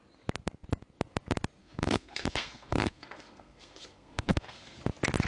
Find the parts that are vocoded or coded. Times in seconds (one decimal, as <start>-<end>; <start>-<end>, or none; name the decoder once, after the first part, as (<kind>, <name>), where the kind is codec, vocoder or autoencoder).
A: 1.6-4.8 (codec, SNAC)